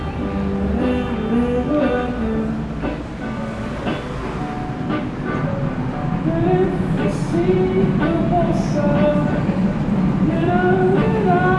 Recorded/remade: recorded